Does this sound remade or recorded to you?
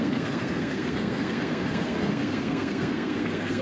remade